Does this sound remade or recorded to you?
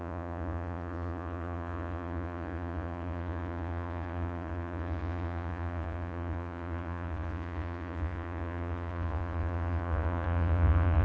remade